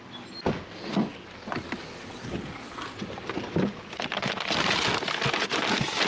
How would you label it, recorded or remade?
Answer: recorded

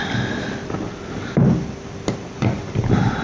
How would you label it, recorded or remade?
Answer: recorded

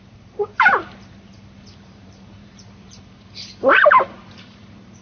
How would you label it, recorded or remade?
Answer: remade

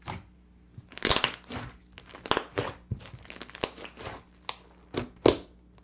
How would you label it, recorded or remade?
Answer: recorded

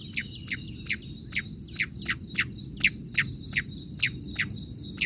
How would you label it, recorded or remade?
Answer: recorded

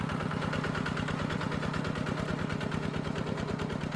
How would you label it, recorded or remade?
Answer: recorded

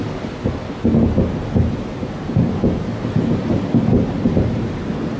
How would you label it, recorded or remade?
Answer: recorded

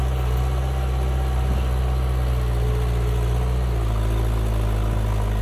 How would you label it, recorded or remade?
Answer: recorded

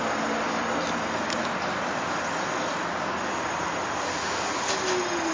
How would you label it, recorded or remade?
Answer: recorded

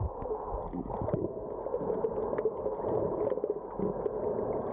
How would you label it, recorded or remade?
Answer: recorded